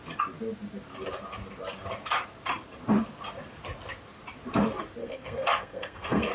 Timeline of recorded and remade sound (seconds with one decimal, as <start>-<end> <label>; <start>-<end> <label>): 0.0-5.0 recorded; 5.0-6.3 remade